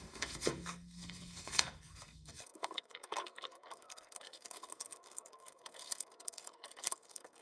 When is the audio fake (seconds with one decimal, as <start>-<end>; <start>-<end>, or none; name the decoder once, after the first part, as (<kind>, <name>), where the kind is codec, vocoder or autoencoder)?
0.0-7.4 (codec, SNAC)